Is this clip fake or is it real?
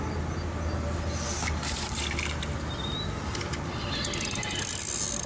real